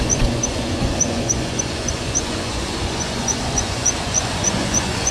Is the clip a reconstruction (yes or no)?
yes